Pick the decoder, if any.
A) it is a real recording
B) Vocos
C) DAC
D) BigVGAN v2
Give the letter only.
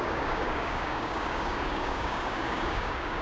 C